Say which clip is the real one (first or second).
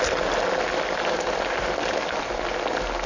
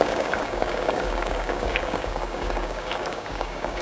first